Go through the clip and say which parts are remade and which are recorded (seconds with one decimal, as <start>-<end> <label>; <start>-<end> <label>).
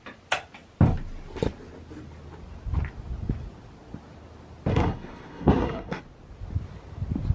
0.0-4.7 recorded; 4.7-6.0 remade; 6.0-7.3 recorded